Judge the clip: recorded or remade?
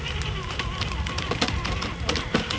recorded